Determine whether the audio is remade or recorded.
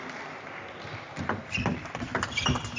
recorded